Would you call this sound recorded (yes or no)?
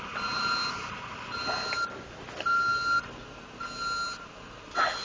yes